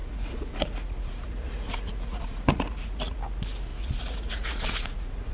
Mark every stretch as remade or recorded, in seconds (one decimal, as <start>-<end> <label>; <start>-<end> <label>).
0.0-3.2 remade; 3.2-3.7 recorded; 3.7-5.3 remade